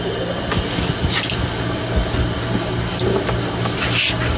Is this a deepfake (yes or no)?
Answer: no